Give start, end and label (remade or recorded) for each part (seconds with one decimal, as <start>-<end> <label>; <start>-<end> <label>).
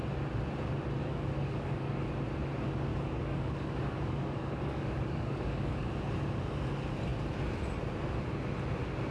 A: 0.0-1.0 recorded; 1.0-2.1 remade; 2.1-2.9 recorded; 2.9-5.9 remade; 5.9-9.1 recorded